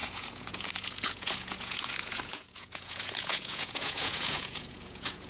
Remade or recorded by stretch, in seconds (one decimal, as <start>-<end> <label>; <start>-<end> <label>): 0.0-5.3 remade